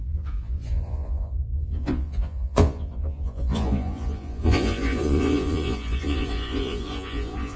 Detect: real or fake fake